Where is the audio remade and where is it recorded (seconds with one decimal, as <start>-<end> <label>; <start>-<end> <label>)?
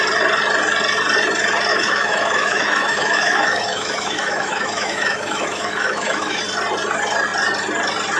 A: 0.0-1.7 recorded; 1.7-6.4 remade; 6.4-8.2 recorded